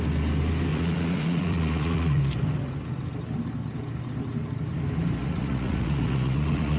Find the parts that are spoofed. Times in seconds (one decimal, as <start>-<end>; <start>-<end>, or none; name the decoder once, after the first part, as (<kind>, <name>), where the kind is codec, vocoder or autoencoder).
0.7-2.2 (vocoder, Vocos); 5.2-6.8